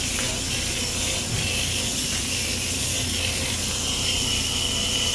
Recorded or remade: recorded